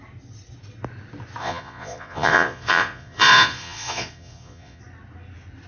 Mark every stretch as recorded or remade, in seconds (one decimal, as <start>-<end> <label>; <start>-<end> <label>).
0.0-1.4 recorded; 1.4-4.8 remade; 4.8-5.7 recorded